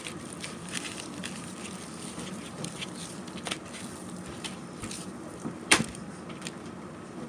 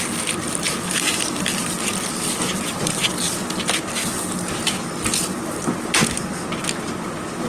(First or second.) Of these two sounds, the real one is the second